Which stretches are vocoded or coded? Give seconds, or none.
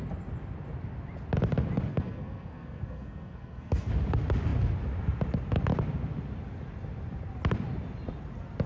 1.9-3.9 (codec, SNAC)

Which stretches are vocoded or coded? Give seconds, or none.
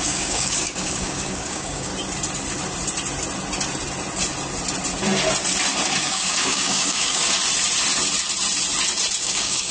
0.0-1.9 (codec, DAC); 6.0-7.2; 9.2-9.7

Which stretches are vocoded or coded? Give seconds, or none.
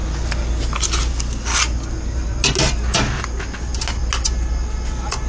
none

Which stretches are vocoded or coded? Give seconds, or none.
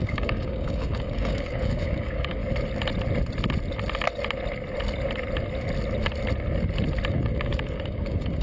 0.0-2.4 (codec, DAC); 7.1-8.4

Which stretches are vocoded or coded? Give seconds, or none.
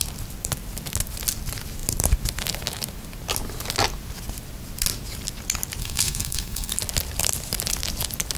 5.8-6.7 (codec, SNAC)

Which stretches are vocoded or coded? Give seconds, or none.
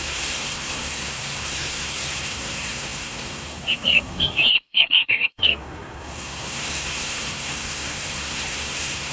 0.0-9.1 (codec, SNAC)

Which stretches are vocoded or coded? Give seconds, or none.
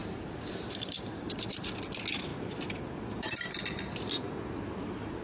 0.0-1.7 (vocoder, BigVGAN v2); 2.3-3.2